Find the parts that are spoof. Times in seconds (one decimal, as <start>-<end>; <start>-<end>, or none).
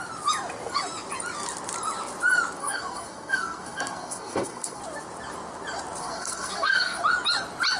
2.6-4.8; 6.0-7.0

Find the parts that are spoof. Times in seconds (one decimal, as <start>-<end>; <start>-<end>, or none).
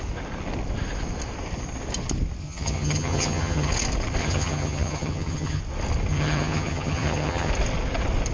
2.4-3.7; 4.2-5.6; 6.1-7.5